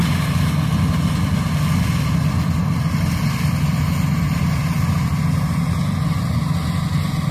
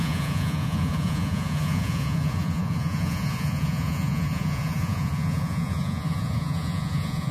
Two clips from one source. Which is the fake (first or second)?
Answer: second